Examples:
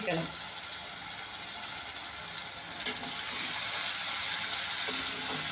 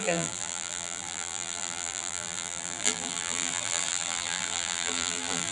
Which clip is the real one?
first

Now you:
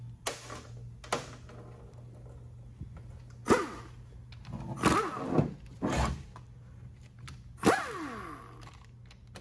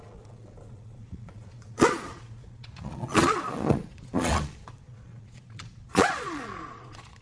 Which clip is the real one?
first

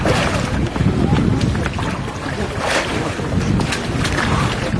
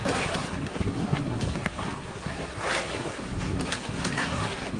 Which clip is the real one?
first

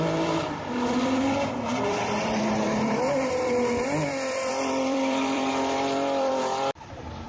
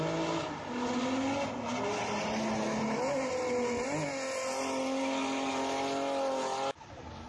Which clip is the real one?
second